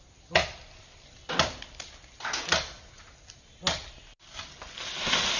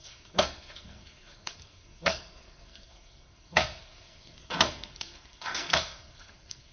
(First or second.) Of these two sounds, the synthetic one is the second